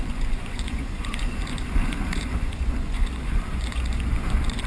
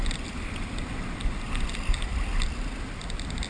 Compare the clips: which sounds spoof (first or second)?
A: first